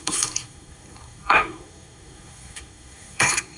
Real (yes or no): no